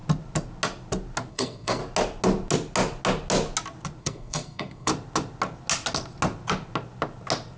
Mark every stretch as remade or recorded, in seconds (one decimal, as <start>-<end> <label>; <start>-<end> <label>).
0.0-1.3 recorded; 1.3-1.8 remade; 1.8-4.0 recorded; 4.0-4.9 remade; 4.9-7.6 recorded